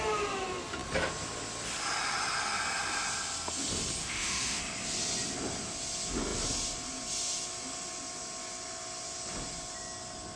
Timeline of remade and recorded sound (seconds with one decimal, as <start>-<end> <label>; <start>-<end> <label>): 0.0-4.0 recorded; 4.0-4.6 remade; 4.6-10.4 recorded